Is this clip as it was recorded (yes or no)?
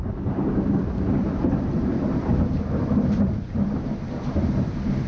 no